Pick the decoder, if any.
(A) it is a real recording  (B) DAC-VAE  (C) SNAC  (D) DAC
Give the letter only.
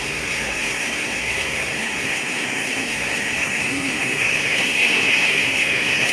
C